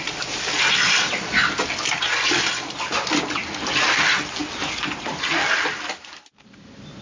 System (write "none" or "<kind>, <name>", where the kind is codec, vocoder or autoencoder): none